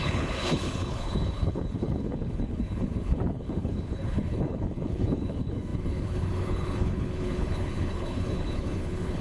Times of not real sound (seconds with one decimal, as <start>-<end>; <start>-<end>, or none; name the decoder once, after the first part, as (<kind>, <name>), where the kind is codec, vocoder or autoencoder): 0.0-9.2 (codec, HILCodec)